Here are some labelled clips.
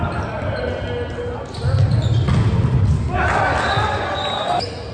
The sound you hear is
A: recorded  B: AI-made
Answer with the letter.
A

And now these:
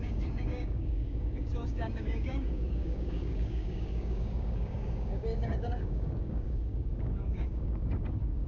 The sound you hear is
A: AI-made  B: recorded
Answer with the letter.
A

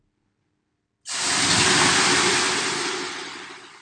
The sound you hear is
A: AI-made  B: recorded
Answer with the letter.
B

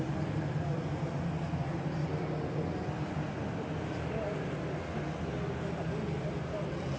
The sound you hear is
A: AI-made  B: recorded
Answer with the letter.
B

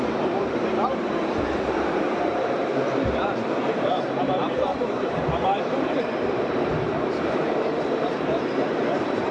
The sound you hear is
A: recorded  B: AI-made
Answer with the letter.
B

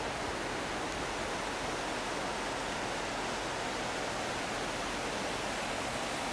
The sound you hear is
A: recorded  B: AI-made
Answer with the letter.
A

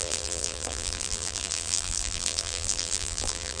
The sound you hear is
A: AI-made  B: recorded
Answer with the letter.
A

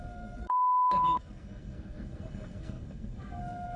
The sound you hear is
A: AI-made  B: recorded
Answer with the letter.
A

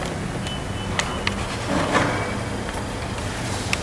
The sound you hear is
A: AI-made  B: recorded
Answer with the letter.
B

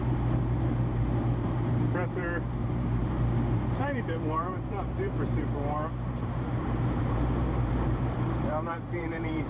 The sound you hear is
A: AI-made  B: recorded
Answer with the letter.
A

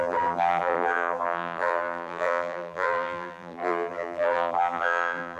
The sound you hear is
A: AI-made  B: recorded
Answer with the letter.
A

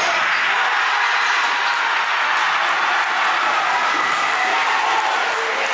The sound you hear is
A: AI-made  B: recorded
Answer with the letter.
B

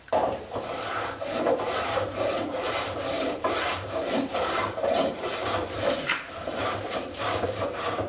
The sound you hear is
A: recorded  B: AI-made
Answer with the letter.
B